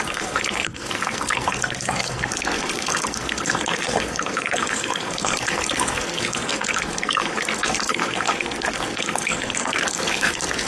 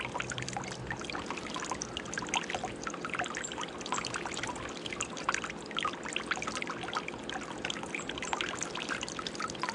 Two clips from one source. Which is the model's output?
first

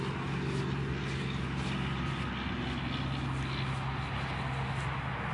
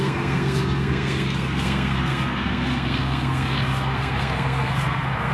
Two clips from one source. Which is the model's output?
second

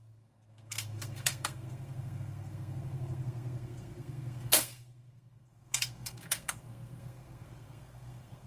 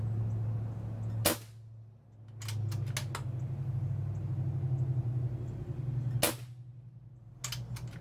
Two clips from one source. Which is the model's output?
first